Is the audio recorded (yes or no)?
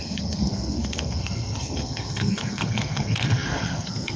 no